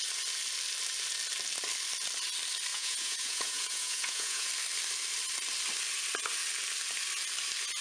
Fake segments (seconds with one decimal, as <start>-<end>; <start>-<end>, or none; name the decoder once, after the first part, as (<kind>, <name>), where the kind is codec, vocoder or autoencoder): 2.7-4.5 (vocoder, Vocos)